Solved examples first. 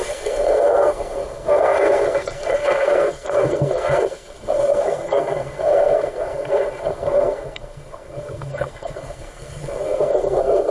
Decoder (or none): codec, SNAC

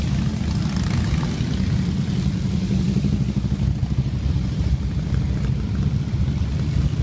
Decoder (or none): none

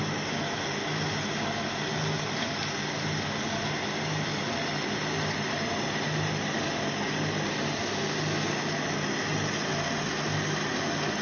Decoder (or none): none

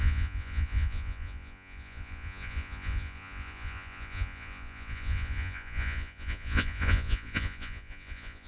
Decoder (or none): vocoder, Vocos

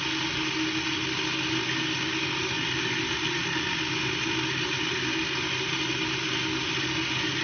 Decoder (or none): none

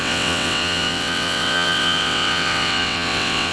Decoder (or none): vocoder, WaveNeXt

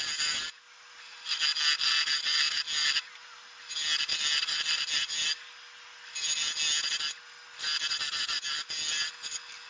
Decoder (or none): none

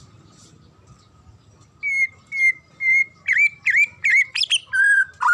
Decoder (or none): none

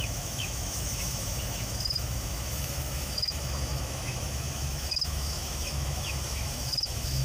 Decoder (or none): autoencoder, DAC-VAE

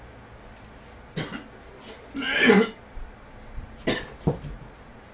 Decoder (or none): vocoder, BigVGAN v2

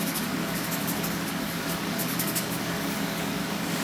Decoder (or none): codec, DAC